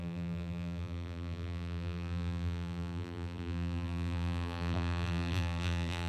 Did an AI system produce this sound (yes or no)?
yes